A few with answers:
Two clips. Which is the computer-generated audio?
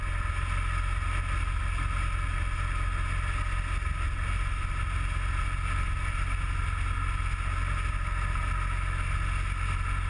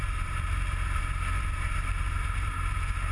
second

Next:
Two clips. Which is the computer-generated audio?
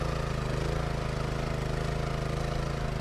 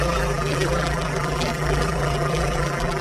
second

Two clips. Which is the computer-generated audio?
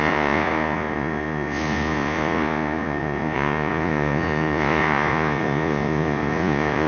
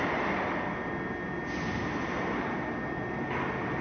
first